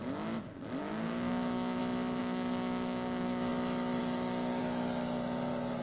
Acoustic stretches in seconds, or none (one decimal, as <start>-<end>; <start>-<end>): 0.0-0.8; 1.8-2.2; 3.5-4.0; 4.6-5.8